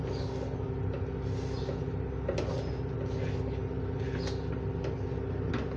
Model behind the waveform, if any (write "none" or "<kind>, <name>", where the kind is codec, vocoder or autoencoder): none